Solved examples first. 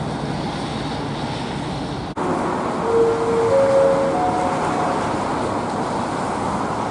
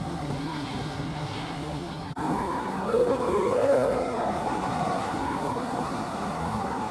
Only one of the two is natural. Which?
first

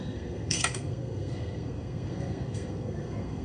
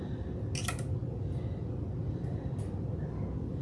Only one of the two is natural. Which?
second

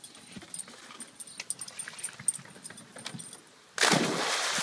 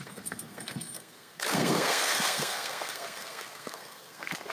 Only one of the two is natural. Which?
first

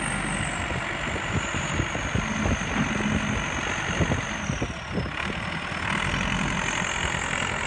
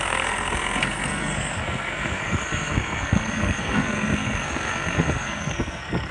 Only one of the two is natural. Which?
first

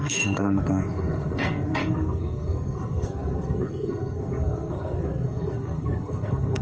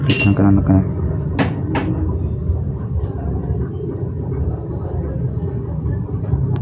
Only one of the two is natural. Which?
second